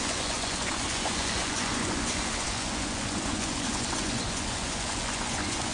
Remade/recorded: remade